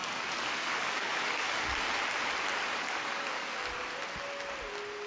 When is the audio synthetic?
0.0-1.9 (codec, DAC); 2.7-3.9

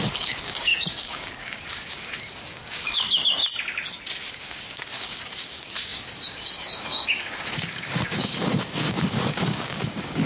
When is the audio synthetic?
0.0-3.4 (codec, DAC); 4.3-10.3

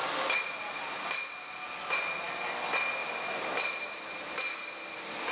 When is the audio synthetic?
none

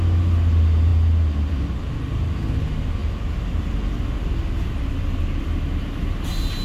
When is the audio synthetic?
none

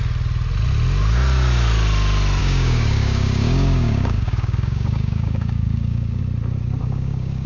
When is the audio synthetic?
2.4-6.2 (codec, DAC); 6.8-7.5

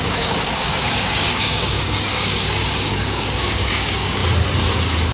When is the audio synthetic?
0.0-4.2 (codec, DAC)

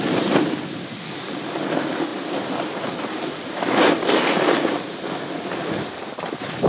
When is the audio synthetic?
none